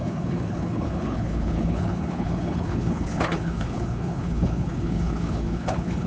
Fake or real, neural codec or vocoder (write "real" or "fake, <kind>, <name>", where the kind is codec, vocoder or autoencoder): fake, codec, HILCodec